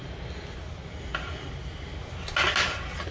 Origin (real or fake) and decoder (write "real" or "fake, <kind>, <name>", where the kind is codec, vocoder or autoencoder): real